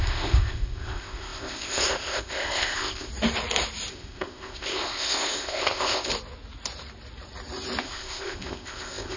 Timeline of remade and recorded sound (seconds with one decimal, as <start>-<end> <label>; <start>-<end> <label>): 0.0-3.1 remade; 3.1-3.9 recorded; 3.9-6.1 remade; 6.1-7.8 recorded; 7.8-9.2 remade